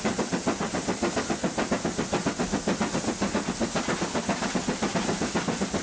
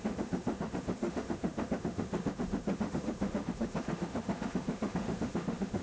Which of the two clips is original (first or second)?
first